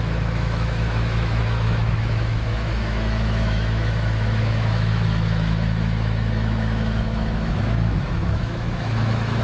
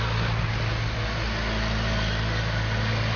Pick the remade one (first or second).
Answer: first